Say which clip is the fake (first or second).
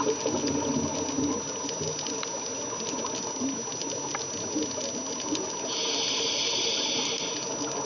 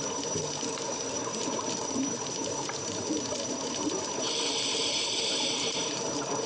second